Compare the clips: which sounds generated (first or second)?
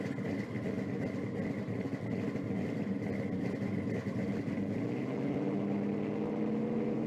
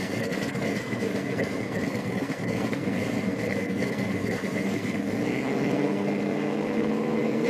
second